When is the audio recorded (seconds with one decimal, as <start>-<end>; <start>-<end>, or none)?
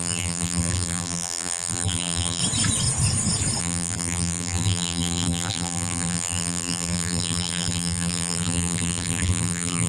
2.4-3.6